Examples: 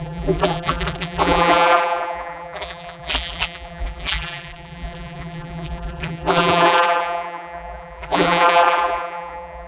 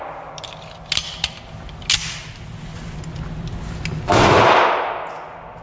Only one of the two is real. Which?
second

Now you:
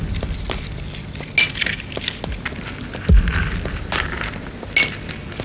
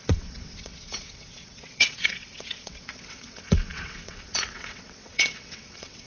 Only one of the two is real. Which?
first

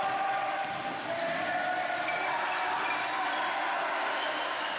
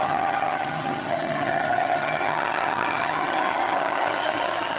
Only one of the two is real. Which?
first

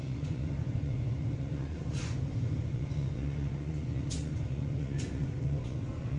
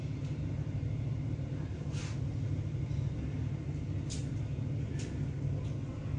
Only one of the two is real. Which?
second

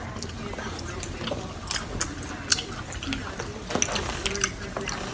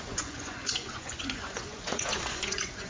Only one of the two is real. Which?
first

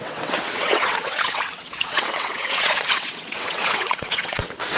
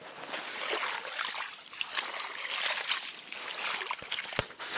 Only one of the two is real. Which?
second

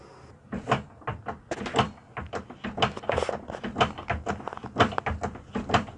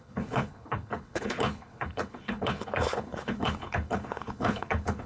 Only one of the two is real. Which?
first